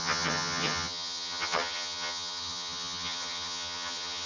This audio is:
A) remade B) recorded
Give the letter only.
A